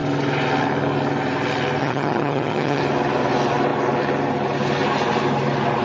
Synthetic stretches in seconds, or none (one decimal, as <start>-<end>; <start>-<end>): 1.8-2.8